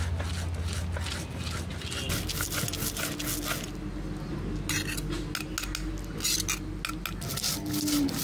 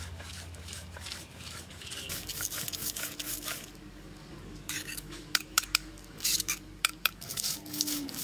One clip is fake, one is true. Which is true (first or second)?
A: first